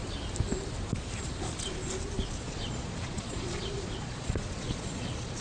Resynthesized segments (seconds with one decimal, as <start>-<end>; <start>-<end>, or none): 2.4-5.4